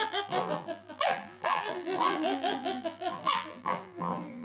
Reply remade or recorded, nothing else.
remade